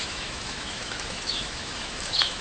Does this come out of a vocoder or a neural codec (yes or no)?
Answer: yes